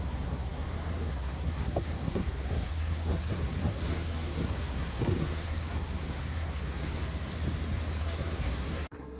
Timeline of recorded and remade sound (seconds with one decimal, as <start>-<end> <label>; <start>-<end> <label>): 0.0-7.0 remade; 7.0-8.0 recorded; 8.0-9.2 remade